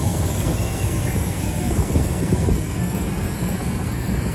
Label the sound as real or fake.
fake